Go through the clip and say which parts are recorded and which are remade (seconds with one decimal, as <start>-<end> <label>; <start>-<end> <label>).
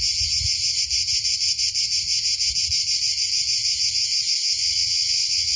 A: 0.0-4.6 recorded; 4.6-5.6 remade